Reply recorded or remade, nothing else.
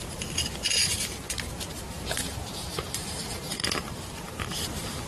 remade